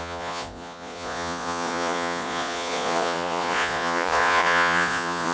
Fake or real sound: fake